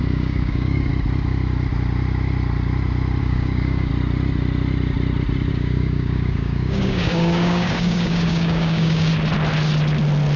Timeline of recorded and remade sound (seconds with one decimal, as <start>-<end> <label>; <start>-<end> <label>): 0.0-0.9 remade; 0.9-3.2 recorded; 3.2-3.9 remade; 3.9-5.5 recorded; 5.5-9.1 remade; 9.1-10.4 recorded